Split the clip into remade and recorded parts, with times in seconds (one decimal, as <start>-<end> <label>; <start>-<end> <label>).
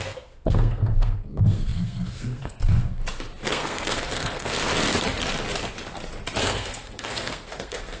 0.0-3.0 remade; 3.0-3.5 recorded; 3.5-4.7 remade; 4.7-6.4 recorded; 6.4-8.0 remade